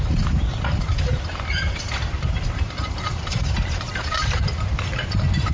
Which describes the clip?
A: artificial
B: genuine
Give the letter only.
A